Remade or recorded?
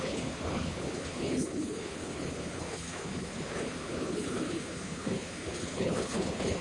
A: remade